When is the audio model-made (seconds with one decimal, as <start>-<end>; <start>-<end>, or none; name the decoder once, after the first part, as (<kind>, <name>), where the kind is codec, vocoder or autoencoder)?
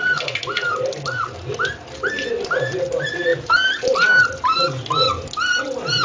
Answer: none